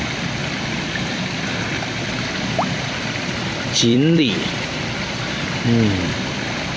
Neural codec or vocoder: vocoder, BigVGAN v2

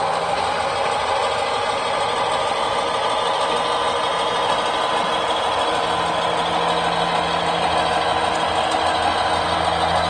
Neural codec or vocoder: none